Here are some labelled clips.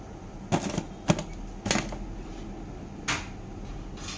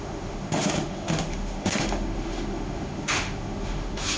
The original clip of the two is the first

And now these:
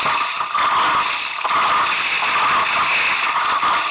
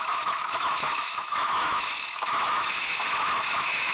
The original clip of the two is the first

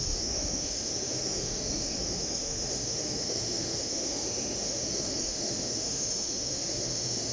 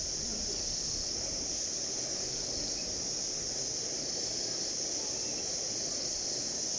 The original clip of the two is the second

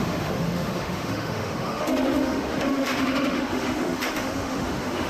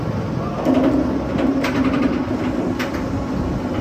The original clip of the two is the second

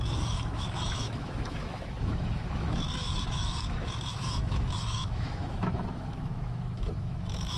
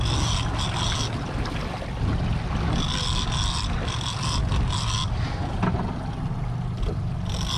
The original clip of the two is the second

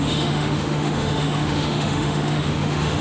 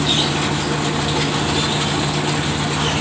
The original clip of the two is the second